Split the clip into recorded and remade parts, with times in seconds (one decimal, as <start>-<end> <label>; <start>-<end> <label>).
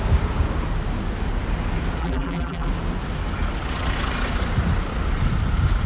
0.0-2.0 recorded; 2.0-2.7 remade; 2.7-5.9 recorded